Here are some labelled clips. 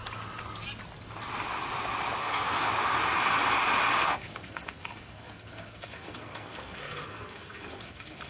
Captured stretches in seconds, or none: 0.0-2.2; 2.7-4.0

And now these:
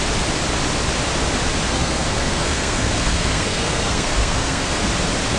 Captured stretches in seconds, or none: 0.0-1.7; 4.9-5.4

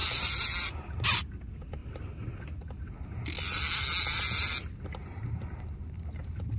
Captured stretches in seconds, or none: 0.0-6.6

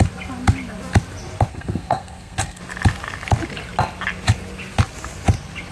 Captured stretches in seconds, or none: 0.0-1.5; 2.6-5.7

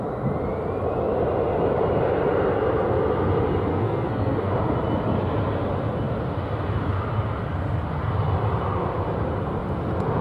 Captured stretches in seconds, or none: 0.0-3.7; 4.5-10.2

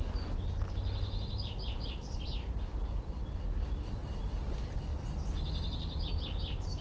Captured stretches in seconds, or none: 0.0-6.8

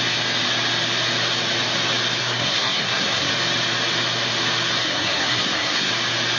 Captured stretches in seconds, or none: 0.0-2.2; 3.3-4.8; 5.9-6.4

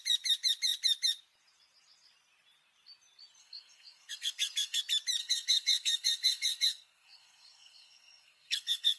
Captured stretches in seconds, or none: 0.0-3.4; 4.8-5.2